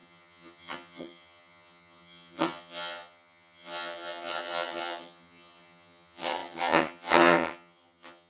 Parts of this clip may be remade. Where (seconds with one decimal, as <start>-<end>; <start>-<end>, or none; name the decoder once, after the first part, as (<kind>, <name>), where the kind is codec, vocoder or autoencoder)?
0.0-8.3 (vocoder, HiFi-GAN)